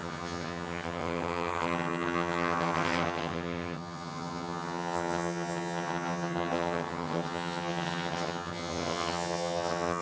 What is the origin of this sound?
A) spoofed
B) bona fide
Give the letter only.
A